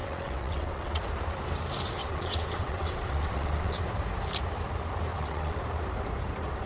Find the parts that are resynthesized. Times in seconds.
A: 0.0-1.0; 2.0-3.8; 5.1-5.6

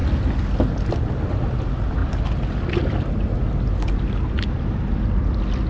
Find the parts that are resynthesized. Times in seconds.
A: none

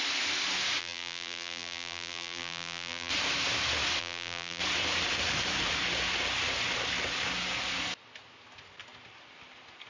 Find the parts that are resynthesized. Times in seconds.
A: 0.8-3.1; 4.0-4.6

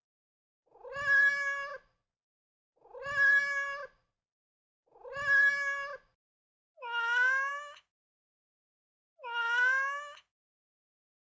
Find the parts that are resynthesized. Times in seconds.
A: none

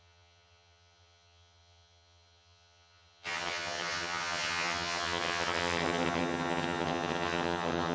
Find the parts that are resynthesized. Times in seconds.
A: 0.0-7.9

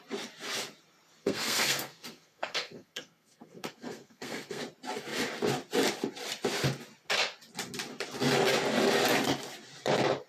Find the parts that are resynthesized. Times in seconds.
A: 1.2-4.6

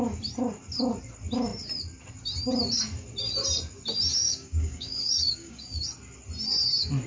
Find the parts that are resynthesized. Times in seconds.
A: 4.2-5.8

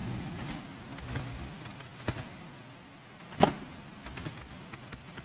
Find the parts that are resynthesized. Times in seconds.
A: 0.0-0.6